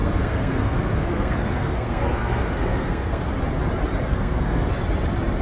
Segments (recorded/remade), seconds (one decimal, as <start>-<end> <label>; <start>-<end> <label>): 0.0-3.2 remade; 3.2-4.1 recorded; 4.1-4.7 remade; 4.7-5.4 recorded